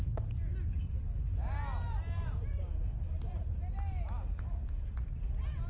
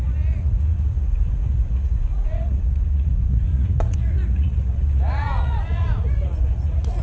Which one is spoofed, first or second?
second